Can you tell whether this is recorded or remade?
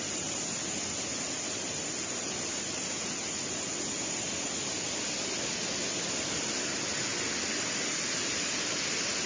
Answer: recorded